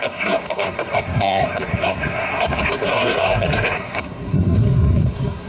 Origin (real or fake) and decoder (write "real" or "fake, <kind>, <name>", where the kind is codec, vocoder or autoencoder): fake, codec, SNAC